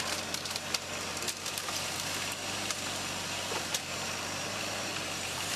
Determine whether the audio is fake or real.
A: fake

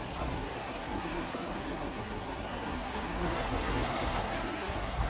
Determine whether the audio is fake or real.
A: fake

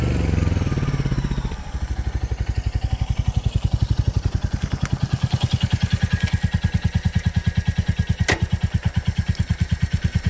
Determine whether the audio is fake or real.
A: real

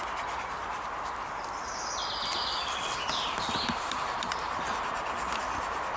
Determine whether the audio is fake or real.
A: real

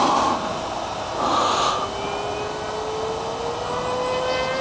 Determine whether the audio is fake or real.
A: real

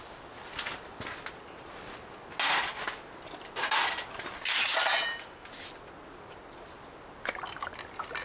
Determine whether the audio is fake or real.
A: real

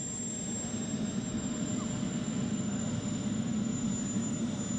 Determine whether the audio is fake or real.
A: real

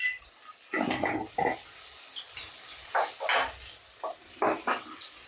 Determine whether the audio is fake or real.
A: real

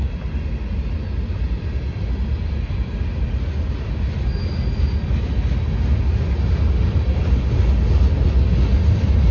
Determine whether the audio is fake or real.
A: real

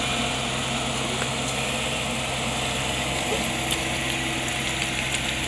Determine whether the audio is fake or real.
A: real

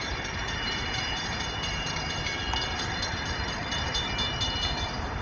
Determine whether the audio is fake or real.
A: fake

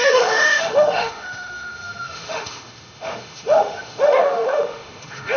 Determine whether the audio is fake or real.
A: fake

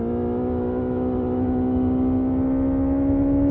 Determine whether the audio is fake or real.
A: real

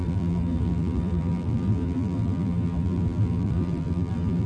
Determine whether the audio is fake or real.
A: fake